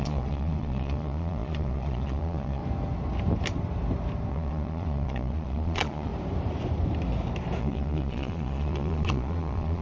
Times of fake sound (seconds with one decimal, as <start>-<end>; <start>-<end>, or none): 0.0-2.6; 4.3-6.1; 7.6-9.8